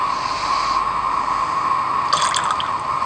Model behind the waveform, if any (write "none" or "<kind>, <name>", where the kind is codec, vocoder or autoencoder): none